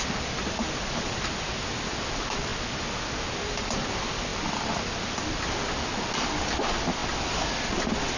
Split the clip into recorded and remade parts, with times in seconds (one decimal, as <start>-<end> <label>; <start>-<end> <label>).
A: 0.0-2.5 remade; 2.5-3.9 recorded; 3.9-7.0 remade; 7.0-8.2 recorded